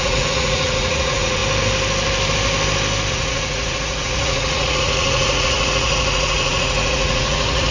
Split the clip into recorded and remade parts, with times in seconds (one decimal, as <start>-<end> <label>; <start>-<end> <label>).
0.0-1.4 remade; 1.4-3.1 recorded; 3.1-7.7 remade

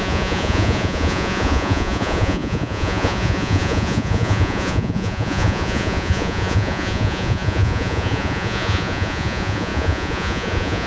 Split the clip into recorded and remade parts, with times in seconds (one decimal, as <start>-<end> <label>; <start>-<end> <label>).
0.0-10.9 remade

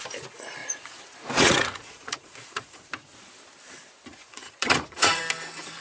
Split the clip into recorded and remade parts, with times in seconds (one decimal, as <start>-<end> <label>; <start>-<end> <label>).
0.0-0.6 recorded; 0.6-2.9 remade; 2.9-4.1 recorded; 4.1-5.2 remade; 5.2-5.8 recorded

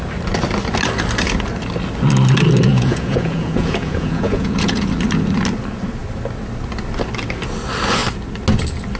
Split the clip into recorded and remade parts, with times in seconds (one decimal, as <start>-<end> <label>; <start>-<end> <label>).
0.0-2.7 recorded; 2.7-4.9 remade; 4.9-9.0 recorded

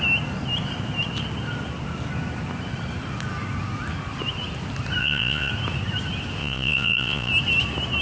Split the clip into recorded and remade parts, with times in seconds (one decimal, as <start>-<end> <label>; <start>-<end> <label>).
0.0-5.0 recorded; 5.0-5.5 remade; 5.5-6.4 recorded; 6.4-7.3 remade; 7.3-8.0 recorded

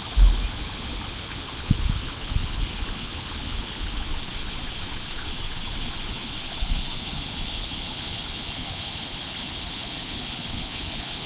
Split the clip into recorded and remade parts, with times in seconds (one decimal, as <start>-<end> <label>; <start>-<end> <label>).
0.0-4.1 recorded; 4.1-7.0 remade; 7.0-11.3 recorded

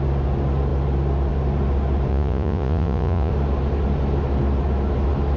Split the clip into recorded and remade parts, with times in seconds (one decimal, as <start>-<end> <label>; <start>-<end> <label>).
0.0-2.1 recorded; 2.1-3.3 remade; 3.3-5.4 recorded

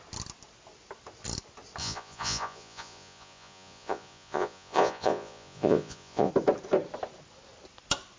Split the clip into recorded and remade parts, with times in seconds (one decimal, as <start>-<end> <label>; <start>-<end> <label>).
0.0-1.8 recorded; 1.8-6.3 remade; 6.3-8.2 recorded